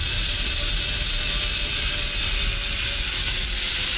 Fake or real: real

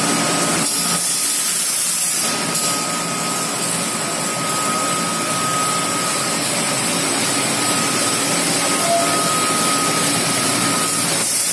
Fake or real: real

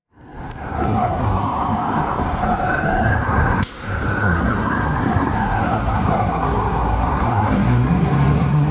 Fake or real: fake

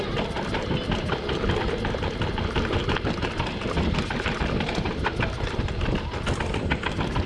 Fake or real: real